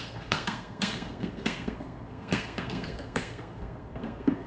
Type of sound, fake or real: fake